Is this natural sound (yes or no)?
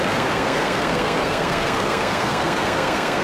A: no